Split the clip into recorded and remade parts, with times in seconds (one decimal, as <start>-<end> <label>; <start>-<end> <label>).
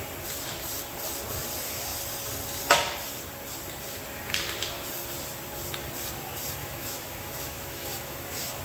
0.0-6.6 recorded; 6.6-8.6 remade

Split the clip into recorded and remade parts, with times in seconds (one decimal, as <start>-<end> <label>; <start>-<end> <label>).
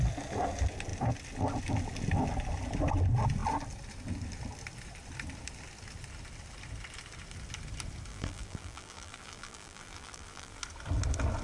0.0-8.1 recorded; 8.1-10.6 remade; 10.6-11.4 recorded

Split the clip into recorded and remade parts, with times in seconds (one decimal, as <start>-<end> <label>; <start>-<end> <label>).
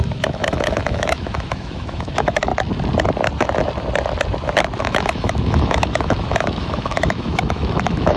0.0-2.5 remade; 2.5-4.8 recorded; 4.8-8.2 remade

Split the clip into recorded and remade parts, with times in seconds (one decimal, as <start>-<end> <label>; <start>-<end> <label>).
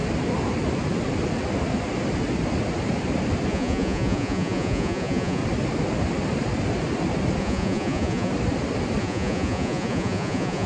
0.0-3.5 recorded; 3.5-5.4 remade; 5.4-7.4 recorded; 7.4-8.3 remade; 8.3-9.0 recorded; 9.0-10.7 remade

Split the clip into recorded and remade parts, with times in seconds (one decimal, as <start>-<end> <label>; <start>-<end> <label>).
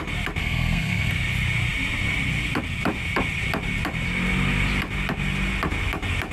0.0-0.4 recorded; 0.4-1.1 remade; 1.1-6.3 recorded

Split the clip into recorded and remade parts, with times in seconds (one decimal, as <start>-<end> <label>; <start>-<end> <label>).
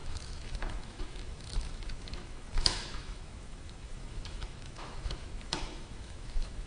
0.0-6.7 remade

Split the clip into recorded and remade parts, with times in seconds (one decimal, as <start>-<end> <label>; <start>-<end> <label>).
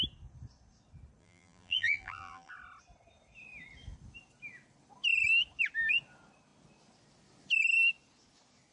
0.0-1.2 recorded; 1.2-2.5 remade; 2.5-8.7 recorded